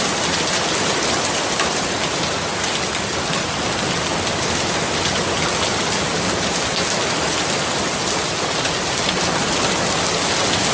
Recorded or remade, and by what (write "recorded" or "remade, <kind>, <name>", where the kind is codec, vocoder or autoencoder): recorded